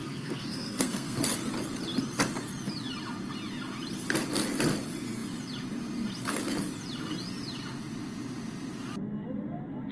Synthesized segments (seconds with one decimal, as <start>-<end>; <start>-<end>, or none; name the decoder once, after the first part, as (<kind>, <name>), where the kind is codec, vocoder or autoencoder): 0.0-1.2 (codec, SNAC)